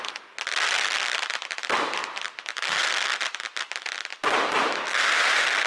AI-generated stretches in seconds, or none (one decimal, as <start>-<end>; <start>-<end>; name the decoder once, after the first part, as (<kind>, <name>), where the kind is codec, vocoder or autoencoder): none